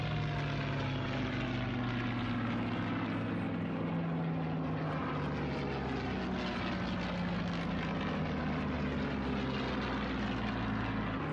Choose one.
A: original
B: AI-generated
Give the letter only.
A